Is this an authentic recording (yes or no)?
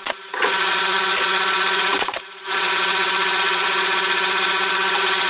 no